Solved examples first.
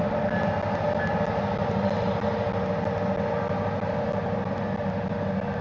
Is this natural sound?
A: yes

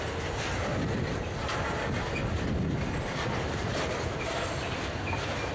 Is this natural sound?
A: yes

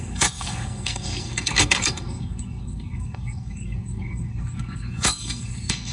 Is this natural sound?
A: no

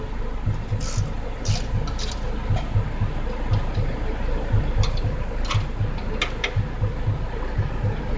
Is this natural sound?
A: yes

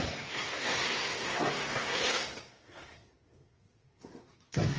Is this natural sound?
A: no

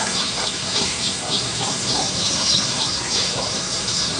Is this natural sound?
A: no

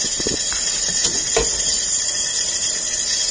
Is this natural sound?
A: yes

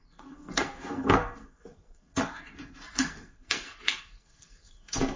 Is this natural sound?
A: no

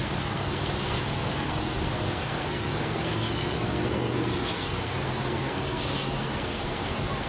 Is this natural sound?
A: no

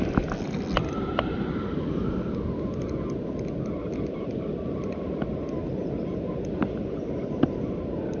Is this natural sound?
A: yes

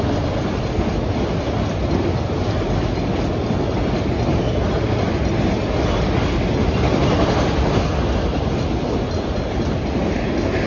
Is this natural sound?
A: yes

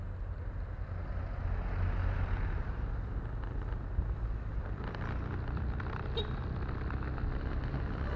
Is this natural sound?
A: yes